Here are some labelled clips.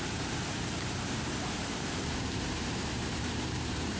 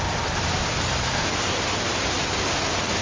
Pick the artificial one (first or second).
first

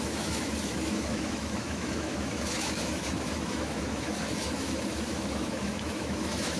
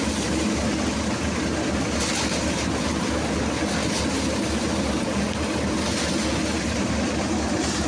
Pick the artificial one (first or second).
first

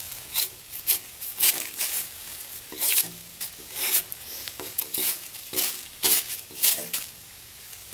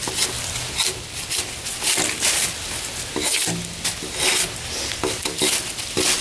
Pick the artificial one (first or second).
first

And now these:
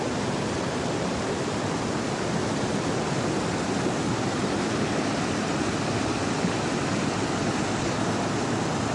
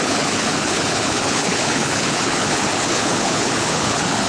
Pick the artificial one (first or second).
second